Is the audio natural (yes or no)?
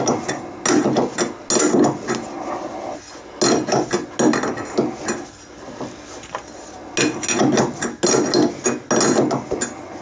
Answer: yes